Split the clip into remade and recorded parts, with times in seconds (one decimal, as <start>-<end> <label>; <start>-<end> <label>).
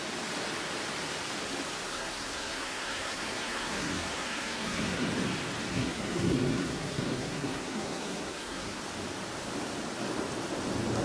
0.0-1.9 recorded; 1.9-5.1 remade; 5.1-5.7 recorded; 5.7-8.8 remade; 8.8-11.0 recorded